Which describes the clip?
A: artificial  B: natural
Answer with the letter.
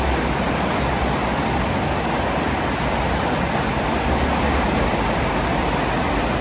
B